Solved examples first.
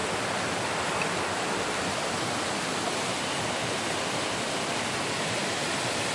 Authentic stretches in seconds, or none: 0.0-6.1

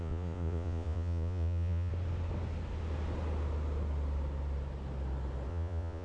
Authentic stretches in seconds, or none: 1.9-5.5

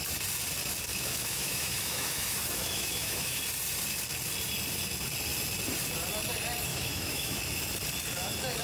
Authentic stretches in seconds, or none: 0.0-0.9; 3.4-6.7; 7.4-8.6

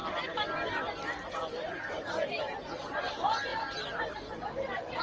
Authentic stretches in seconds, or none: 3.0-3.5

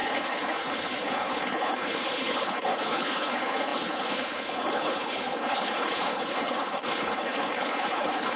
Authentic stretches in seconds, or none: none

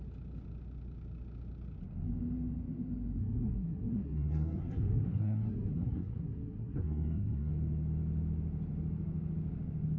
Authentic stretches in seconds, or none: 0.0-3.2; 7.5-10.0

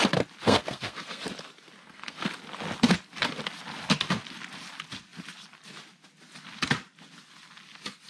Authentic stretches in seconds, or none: 0.0-0.4; 1.2-1.8; 2.3-8.1

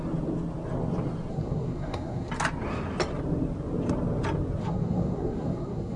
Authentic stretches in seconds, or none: 0.0-1.3; 2.3-4.6